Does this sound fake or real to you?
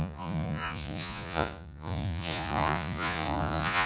fake